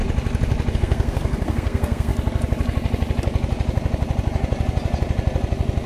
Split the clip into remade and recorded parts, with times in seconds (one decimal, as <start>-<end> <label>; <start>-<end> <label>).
0.0-0.7 recorded; 0.7-2.1 remade; 2.1-5.9 recorded